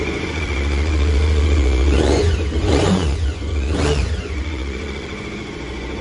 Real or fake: fake